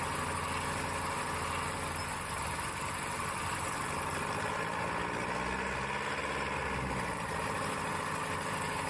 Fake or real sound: real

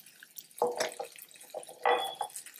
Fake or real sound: real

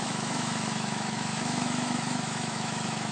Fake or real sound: fake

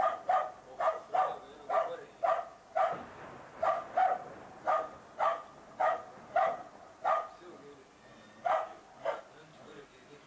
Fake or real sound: real